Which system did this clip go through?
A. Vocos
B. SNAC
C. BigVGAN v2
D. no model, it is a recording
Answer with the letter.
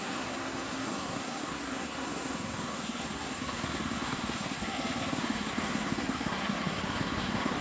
B